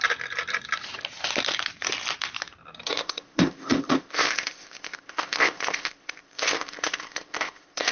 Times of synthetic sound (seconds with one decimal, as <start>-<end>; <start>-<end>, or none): 2.9-7.9